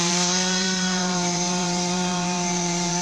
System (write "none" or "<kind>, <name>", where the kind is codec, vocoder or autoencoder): vocoder, BigVGAN v2